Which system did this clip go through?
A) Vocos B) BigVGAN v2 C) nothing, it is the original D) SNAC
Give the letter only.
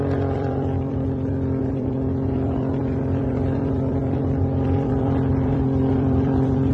B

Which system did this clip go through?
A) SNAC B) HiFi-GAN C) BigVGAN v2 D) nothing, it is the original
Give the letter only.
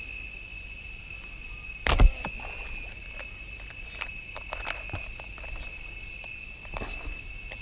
D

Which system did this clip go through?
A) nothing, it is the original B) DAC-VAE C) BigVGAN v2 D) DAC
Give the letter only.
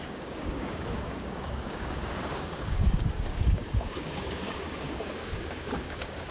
D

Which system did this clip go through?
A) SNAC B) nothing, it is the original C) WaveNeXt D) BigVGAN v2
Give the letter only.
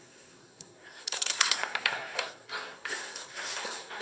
A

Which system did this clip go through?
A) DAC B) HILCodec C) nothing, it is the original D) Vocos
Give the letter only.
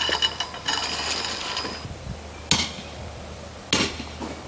C